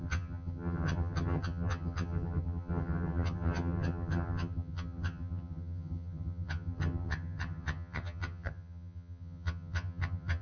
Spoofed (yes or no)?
yes